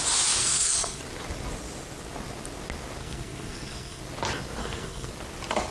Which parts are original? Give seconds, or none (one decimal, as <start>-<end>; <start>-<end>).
0.0-0.4; 1.0-3.0; 4.0-4.6; 5.1-5.7